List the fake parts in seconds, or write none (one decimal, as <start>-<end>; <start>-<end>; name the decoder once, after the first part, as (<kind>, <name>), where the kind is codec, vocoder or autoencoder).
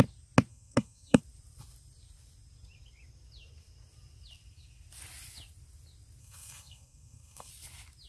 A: 0.5-1.2 (codec, SNAC); 6.2-7.5